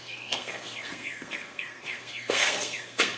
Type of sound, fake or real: fake